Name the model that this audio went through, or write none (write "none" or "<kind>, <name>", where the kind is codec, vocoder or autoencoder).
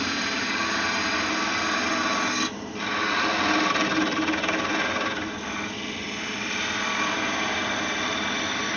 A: none